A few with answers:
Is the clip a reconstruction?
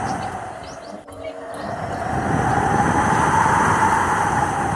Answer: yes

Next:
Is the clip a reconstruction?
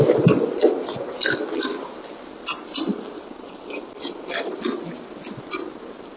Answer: no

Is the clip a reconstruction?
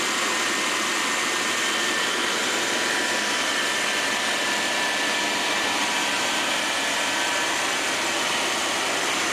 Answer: no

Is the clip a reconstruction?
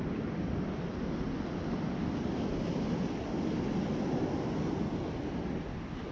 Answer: no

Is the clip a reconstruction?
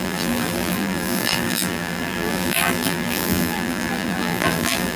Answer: yes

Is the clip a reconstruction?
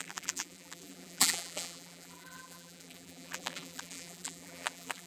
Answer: yes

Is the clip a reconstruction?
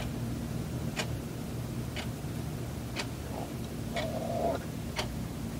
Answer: no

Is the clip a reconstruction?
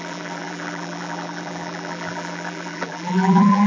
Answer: yes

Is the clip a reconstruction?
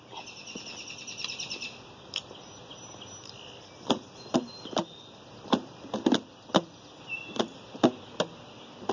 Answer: no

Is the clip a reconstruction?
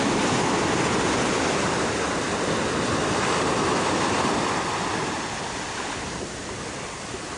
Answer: yes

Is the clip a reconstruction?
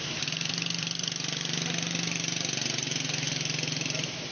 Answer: yes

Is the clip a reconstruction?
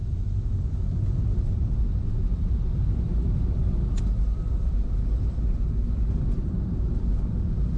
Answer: yes